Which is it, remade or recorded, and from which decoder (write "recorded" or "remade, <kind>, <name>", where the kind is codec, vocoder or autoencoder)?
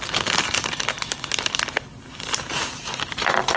recorded